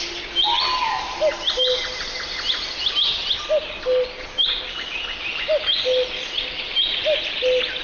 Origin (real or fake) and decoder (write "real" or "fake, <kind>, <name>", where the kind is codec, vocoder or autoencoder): real